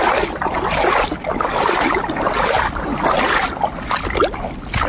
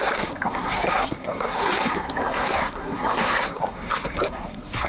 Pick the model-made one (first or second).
second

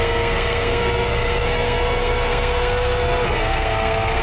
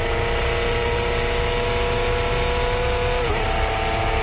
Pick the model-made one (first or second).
first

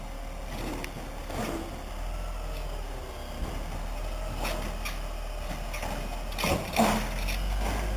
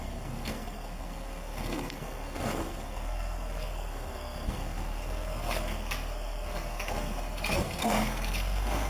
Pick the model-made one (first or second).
second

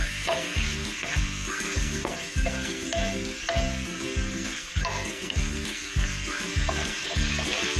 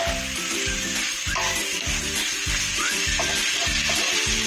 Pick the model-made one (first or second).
first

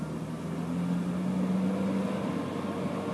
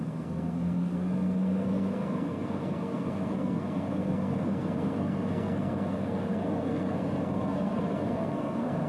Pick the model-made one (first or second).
second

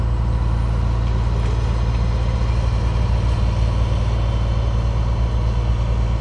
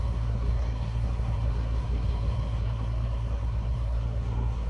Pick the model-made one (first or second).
second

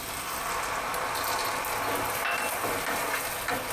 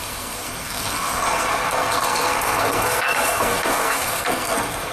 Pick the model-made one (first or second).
second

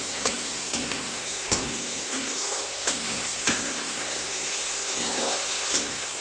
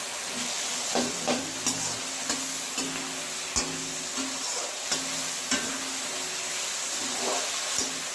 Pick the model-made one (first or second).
first